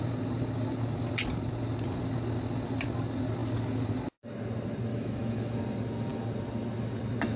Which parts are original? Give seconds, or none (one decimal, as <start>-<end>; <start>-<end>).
0.0-4.9; 5.6-7.4